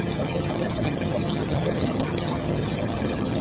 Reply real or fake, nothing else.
fake